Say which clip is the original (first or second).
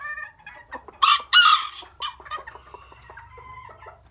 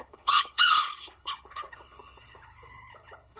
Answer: first